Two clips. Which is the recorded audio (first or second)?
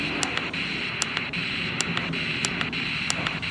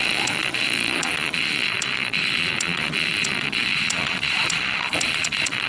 first